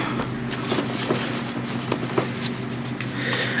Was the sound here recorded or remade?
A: recorded